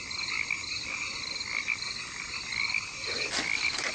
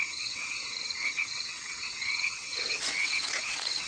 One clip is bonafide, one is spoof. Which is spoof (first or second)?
second